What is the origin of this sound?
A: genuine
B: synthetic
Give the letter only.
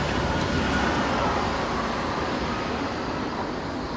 A